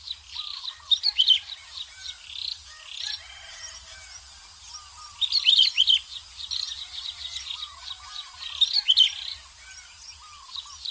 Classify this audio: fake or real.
real